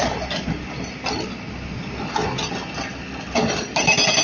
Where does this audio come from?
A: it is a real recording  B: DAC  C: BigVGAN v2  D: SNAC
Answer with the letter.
A